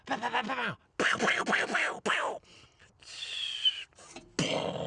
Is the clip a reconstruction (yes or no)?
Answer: no